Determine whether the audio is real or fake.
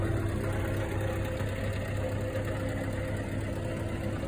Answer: real